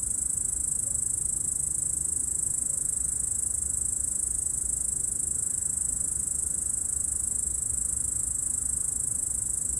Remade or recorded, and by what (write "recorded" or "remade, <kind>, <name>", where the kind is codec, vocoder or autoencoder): recorded